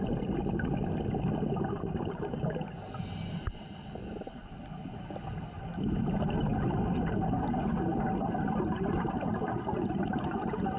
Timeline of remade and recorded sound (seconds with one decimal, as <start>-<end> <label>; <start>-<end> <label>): 0.0-10.8 recorded